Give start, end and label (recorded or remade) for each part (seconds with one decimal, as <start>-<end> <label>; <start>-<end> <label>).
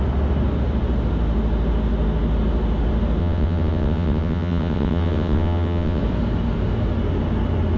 0.0-3.2 recorded; 3.2-6.0 remade; 6.0-7.8 recorded